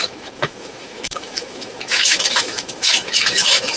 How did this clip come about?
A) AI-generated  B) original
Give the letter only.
A